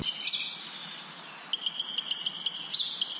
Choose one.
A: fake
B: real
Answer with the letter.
B